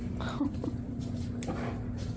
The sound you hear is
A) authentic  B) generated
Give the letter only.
A